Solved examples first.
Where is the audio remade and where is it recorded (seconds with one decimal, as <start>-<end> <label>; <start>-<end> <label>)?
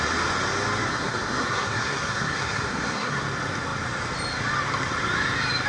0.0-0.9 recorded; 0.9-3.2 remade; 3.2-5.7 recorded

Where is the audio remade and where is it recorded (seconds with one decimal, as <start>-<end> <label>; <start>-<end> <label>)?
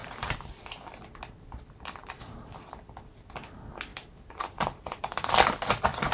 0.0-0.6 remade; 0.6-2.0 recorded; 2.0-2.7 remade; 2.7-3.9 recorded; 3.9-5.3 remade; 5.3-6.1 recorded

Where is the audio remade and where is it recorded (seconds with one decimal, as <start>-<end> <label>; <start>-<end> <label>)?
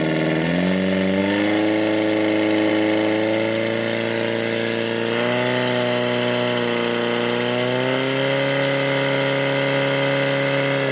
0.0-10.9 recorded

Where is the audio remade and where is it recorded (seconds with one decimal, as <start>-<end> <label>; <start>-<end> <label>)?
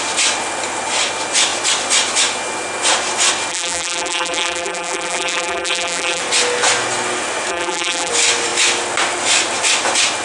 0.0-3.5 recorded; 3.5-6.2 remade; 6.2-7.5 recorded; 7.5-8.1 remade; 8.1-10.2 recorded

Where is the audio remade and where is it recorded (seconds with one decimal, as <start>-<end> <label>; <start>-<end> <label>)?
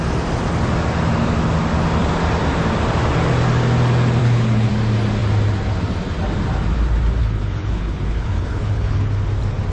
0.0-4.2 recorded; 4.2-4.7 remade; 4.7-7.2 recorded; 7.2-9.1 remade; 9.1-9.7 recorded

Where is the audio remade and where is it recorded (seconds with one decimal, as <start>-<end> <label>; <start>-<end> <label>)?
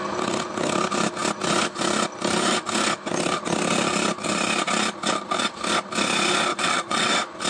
0.0-6.5 recorded; 6.5-7.1 remade; 7.1-7.5 recorded